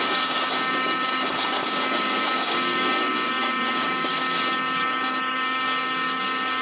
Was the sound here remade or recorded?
remade